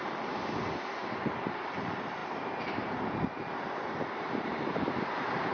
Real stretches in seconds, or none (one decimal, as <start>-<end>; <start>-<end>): none